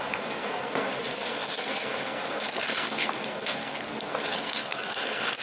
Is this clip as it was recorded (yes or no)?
no